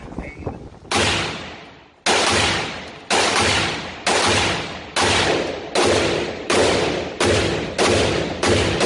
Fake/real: real